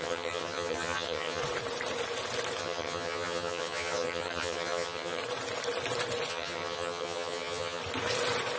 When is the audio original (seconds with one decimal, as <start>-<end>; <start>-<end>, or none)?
1.4-2.6; 5.2-6.3; 7.8-8.6